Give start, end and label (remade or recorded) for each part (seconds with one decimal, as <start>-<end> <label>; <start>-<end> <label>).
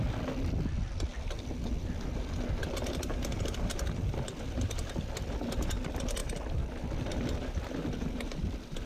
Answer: 0.0-8.9 recorded